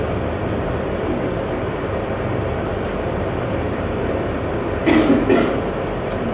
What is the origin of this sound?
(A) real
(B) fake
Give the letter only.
A